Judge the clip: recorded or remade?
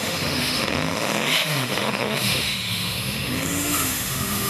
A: remade